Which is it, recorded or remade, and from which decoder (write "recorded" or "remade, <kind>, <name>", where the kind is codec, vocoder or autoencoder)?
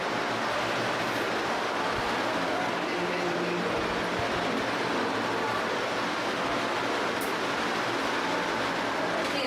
recorded